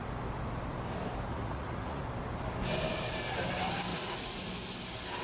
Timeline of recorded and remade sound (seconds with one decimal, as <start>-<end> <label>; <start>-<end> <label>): 0.0-1.3 recorded; 1.3-2.0 remade; 2.0-3.9 recorded; 3.9-4.5 remade; 4.5-5.2 recorded

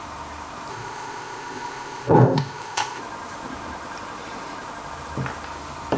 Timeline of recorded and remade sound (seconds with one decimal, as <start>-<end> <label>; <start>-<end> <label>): 0.0-0.7 recorded; 0.7-3.0 remade; 3.0-6.0 recorded

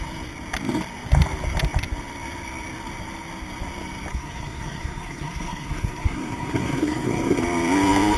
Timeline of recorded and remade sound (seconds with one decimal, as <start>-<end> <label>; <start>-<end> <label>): 0.0-4.1 recorded; 4.1-7.4 remade; 7.4-8.2 recorded

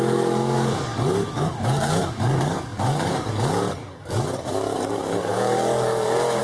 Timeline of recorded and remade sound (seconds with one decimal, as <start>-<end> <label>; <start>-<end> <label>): 0.0-6.4 remade